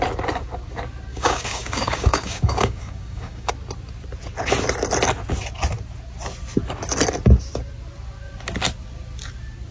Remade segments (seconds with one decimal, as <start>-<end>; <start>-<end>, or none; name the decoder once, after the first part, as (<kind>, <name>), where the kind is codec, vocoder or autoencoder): 1.1-3.5 (codec, DAC)